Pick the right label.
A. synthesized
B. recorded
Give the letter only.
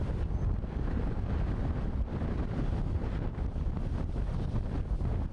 B